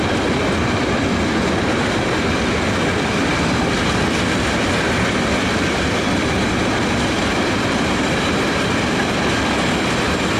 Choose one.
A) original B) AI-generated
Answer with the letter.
A